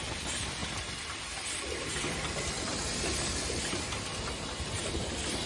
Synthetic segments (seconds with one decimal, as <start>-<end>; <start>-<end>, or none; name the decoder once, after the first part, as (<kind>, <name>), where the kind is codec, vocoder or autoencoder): none